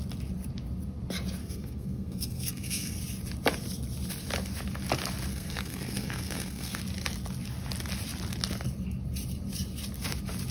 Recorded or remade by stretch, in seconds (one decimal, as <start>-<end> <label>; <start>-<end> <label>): 0.0-1.4 recorded; 1.4-3.0 remade; 3.0-5.3 recorded; 5.3-6.8 remade; 6.8-10.5 recorded